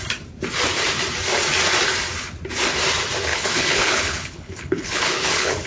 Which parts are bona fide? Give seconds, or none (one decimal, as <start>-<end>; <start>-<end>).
0.0-3.3